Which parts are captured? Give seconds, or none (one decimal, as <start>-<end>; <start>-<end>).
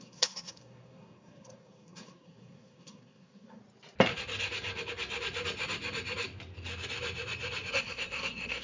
3.6-7.7